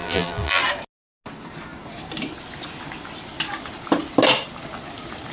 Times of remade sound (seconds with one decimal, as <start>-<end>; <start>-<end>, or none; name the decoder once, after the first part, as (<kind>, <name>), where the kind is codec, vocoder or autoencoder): 0.0-0.6 (vocoder, BigVGAN v2)